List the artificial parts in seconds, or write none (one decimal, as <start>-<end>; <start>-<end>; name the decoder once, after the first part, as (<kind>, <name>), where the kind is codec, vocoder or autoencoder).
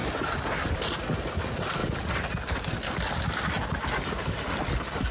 none